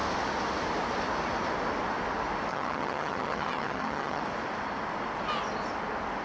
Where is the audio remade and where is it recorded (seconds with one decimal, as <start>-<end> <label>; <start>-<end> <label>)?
0.0-2.5 recorded; 2.5-4.2 remade; 4.2-6.2 recorded